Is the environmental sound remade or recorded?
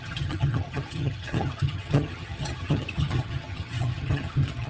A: remade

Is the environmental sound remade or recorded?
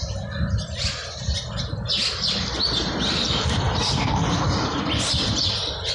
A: recorded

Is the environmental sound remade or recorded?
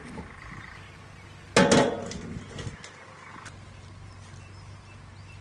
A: recorded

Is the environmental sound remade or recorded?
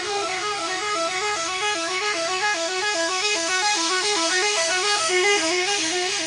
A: remade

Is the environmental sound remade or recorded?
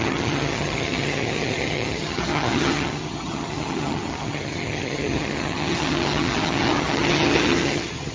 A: remade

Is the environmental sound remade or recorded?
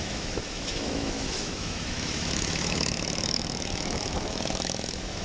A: remade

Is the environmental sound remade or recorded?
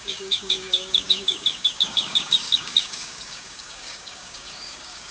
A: remade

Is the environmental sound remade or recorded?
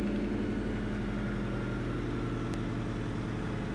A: recorded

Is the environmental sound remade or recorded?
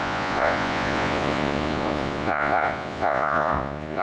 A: remade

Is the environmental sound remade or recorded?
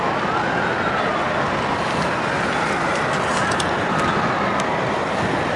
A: recorded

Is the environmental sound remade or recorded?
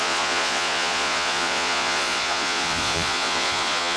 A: remade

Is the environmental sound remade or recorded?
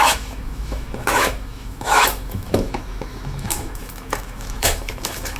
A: remade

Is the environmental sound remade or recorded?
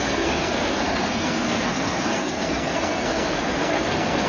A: remade